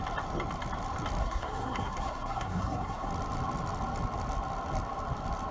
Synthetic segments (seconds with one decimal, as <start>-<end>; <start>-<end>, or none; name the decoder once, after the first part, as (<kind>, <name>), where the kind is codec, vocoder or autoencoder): 1.2-3.1 (codec, SNAC)